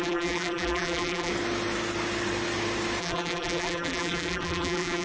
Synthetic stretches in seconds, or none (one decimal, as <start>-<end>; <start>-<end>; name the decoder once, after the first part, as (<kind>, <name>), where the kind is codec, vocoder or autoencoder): 0.0-1.3 (vocoder, BigVGAN v2); 3.0-5.0